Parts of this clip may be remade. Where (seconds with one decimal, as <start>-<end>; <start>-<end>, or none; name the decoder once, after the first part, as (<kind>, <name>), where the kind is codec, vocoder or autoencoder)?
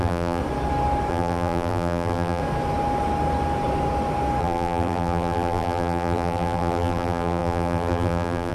0.0-0.4 (vocoder, BigVGAN v2); 1.1-2.4; 4.4-8.5